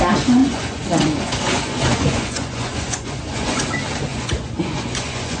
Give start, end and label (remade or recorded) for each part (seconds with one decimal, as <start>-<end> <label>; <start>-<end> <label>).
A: 0.0-0.4 recorded; 0.4-3.6 remade; 3.6-4.1 recorded; 4.1-5.4 remade